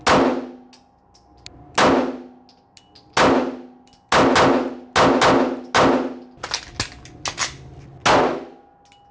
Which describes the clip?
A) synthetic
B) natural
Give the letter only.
B